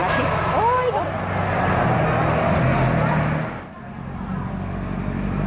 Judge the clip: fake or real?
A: real